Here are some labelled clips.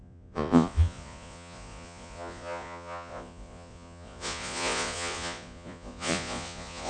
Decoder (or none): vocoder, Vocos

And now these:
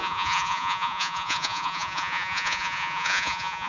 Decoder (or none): vocoder, Vocos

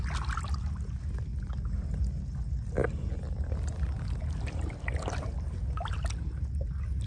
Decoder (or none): none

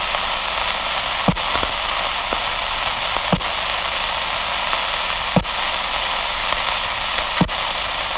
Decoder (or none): none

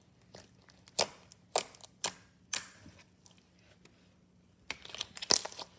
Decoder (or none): none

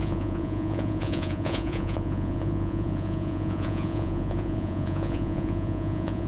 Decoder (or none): vocoder, Vocos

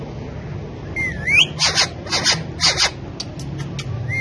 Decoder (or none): none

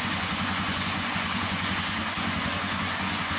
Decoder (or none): vocoder, Vocos